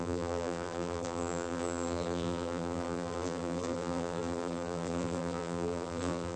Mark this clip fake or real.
fake